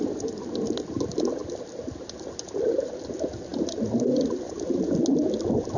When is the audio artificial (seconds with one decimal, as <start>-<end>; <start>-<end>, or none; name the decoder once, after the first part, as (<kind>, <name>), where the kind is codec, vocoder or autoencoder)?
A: none